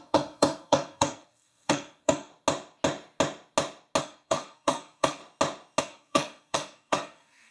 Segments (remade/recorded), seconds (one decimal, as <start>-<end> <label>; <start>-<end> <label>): 0.0-2.3 remade; 2.3-4.0 recorded; 4.0-5.2 remade; 5.2-5.8 recorded; 5.8-7.5 remade